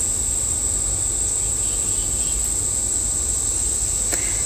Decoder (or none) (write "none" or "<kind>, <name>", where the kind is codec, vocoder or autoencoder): none